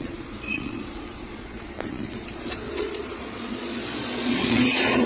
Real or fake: fake